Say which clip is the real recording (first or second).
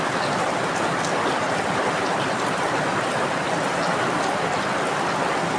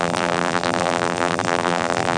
first